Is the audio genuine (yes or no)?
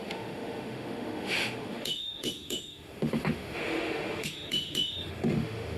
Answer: no